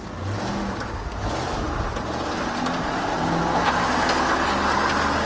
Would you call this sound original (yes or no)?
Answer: yes